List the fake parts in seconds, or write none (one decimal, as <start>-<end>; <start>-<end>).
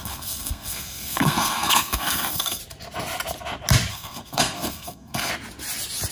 0.0-2.6; 3.9-5.3